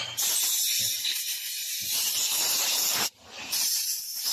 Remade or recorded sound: remade